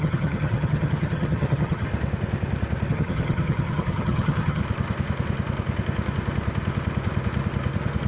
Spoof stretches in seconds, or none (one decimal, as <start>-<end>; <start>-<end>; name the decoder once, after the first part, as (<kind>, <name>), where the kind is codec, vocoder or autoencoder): 0.0-1.9 (vocoder, HiFi-GAN); 2.9-4.6